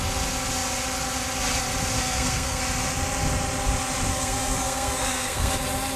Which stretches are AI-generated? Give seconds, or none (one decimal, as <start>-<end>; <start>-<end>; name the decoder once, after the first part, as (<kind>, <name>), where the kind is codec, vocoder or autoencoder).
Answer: 2.0-2.6 (codec, SNAC); 4.1-5.5